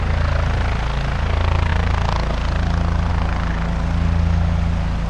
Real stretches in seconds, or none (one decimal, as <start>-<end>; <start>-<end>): 0.0-5.1